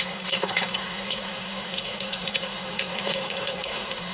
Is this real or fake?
fake